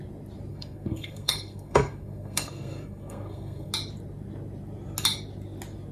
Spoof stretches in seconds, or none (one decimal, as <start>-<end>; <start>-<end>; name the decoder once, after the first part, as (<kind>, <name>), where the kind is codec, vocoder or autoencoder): 0.5-3.7 (codec, SNAC)